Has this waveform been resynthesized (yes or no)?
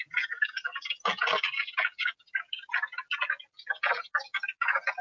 yes